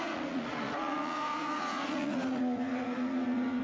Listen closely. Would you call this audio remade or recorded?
remade